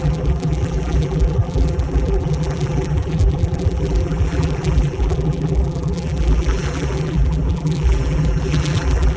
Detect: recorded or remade remade